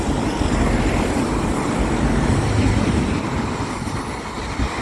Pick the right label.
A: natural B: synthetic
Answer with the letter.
A